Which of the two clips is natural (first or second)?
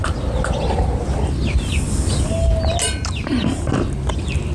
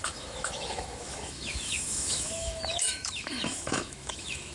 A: first